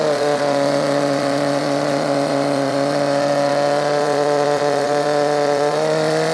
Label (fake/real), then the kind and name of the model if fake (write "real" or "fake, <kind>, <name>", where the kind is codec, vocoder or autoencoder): fake, vocoder, Vocos